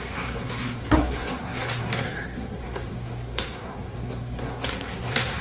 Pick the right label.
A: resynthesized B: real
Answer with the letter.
A